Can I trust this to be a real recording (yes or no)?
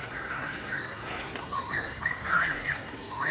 no